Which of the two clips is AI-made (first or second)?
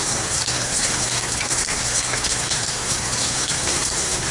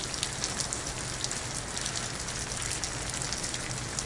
first